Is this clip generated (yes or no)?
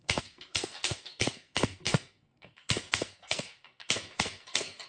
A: yes